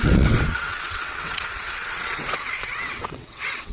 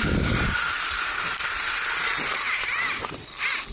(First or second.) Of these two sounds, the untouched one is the second